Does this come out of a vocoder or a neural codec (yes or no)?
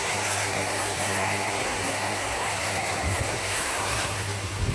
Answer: yes